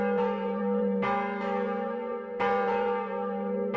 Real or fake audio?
fake